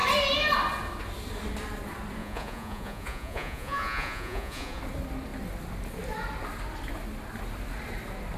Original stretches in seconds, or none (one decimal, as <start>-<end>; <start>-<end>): 0.0-2.2; 4.8-8.4